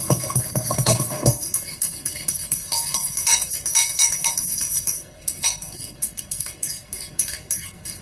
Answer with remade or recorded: remade